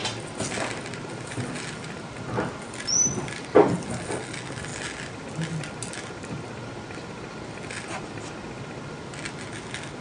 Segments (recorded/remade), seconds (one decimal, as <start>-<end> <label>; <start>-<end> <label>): 0.0-10.0 recorded